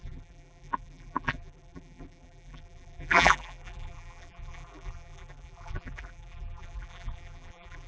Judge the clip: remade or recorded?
remade